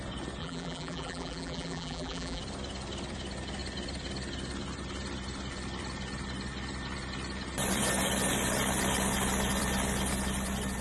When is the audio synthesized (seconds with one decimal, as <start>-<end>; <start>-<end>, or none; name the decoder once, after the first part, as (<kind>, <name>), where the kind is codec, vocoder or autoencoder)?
0.4-2.4 (vocoder, BigVGAN v2)